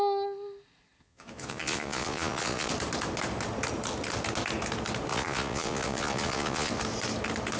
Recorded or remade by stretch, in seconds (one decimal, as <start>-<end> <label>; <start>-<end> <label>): 0.0-1.0 recorded; 1.0-2.7 remade; 2.7-5.1 recorded; 5.1-6.8 remade; 6.8-7.6 recorded